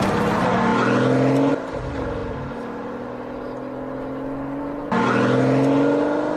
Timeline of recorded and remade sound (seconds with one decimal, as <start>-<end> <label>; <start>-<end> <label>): 0.0-6.4 recorded

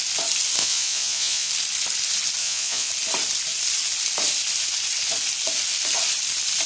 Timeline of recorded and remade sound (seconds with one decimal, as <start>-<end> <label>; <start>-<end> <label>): 0.0-0.6 recorded; 0.6-1.5 remade; 1.5-2.4 recorded; 2.4-2.9 remade; 2.9-6.7 recorded

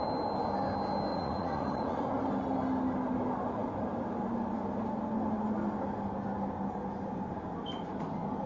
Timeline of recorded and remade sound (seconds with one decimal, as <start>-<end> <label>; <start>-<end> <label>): 0.0-1.1 recorded; 1.1-2.1 remade; 2.1-8.5 recorded

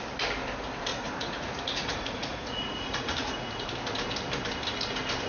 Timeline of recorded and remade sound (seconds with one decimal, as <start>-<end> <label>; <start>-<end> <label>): 0.0-0.9 recorded; 0.9-3.5 remade; 3.5-5.3 recorded

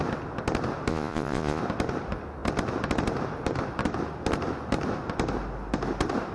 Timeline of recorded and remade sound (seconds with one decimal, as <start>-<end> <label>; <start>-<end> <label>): 0.0-0.9 recorded; 0.9-1.6 remade; 1.6-6.3 recorded

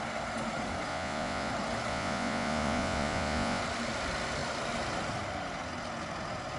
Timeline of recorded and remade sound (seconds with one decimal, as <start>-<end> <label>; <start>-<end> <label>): 0.0-0.9 recorded; 0.9-1.5 remade; 1.5-1.9 recorded; 1.9-3.6 remade; 3.6-6.6 recorded

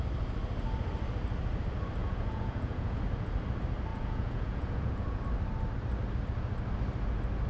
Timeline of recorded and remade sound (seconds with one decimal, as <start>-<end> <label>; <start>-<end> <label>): 0.0-2.0 recorded; 2.0-3.0 remade; 3.0-3.9 recorded; 3.9-5.2 remade; 5.2-7.5 recorded